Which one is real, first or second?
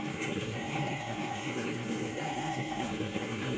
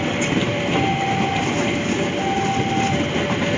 second